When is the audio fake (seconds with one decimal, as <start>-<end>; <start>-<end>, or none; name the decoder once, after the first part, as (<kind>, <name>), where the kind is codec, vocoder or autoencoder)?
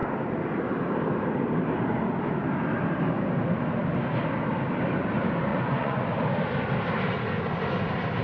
5.5-6.0 (vocoder, Vocos)